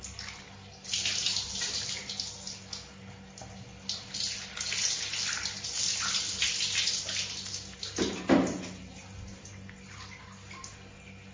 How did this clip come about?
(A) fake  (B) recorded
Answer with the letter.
B